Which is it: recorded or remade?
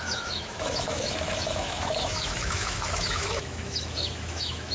remade